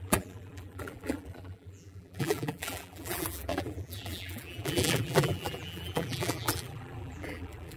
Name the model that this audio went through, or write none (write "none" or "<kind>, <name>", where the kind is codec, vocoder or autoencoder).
vocoder, BigVGAN v2